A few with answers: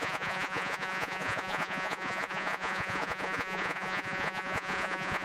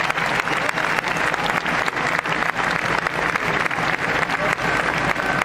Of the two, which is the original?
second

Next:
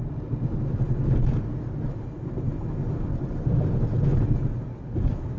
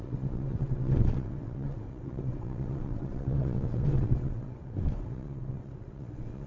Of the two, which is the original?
first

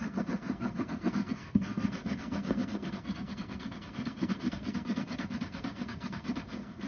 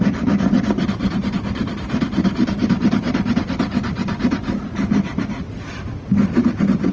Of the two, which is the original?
second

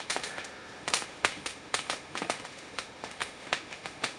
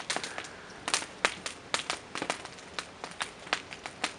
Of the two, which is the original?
second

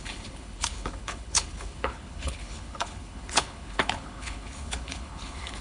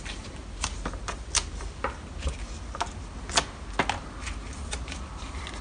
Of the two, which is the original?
second